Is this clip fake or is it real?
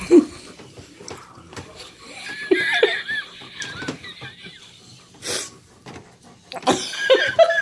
real